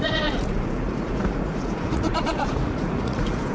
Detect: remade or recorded remade